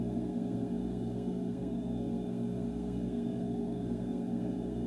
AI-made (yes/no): yes